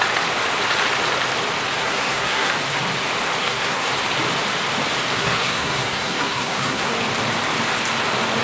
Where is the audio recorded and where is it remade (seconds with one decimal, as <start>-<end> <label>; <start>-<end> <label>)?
0.0-1.8 recorded; 1.8-2.5 remade; 2.5-3.4 recorded; 3.4-3.9 remade; 3.9-5.1 recorded; 5.1-6.9 remade; 6.9-8.4 recorded